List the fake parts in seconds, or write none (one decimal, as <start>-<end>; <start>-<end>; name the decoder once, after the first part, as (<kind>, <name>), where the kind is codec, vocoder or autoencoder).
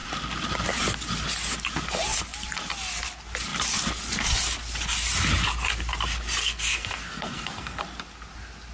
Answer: 6.4-7.8 (codec, SNAC)